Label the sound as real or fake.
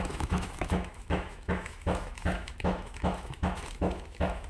fake